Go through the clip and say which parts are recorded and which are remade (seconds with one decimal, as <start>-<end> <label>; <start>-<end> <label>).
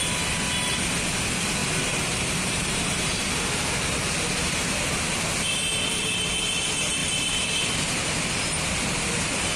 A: 0.0-1.6 recorded; 1.6-3.3 remade; 3.3-9.6 recorded